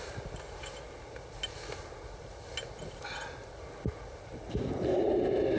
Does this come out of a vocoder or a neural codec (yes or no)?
no